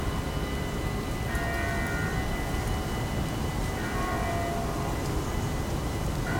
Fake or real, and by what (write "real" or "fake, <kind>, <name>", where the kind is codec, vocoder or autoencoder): real